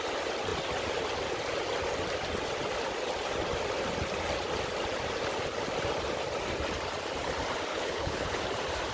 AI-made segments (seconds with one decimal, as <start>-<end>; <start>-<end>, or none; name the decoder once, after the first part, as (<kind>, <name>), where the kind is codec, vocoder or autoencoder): 7.7-8.4 (codec, HILCodec)